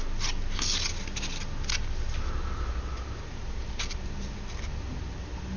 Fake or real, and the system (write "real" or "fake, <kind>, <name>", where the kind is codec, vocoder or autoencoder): real